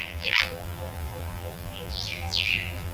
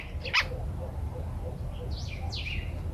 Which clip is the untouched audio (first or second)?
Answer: second